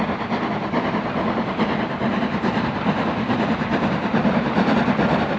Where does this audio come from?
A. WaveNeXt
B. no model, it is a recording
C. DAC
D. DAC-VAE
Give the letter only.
B